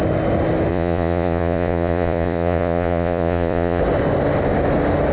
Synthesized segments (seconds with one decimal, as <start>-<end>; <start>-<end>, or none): 0.7-3.8